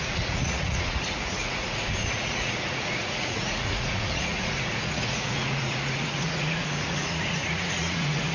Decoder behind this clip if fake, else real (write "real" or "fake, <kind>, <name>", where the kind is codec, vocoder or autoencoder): fake, vocoder, Vocos